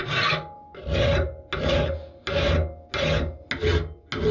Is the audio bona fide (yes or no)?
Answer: yes